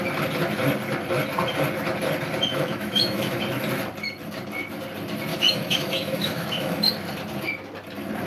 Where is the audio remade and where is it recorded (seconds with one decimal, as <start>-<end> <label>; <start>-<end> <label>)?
0.0-2.5 recorded; 2.5-3.4 remade; 3.4-5.3 recorded; 5.3-6.9 remade; 6.9-8.3 recorded